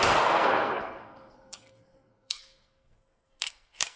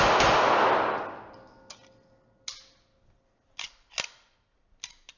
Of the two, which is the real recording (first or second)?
second